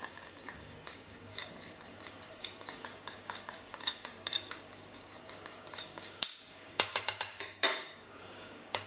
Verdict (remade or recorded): remade